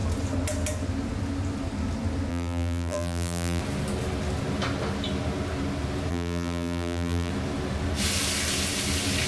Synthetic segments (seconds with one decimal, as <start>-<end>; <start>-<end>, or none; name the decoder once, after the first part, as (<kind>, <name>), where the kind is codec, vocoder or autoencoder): 2.3-3.6 (vocoder, BigVGAN v2); 6.1-7.3